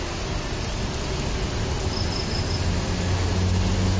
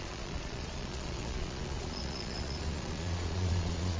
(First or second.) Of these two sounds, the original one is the first